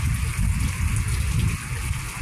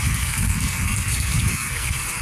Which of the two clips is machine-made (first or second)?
second